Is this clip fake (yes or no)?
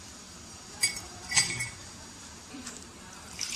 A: yes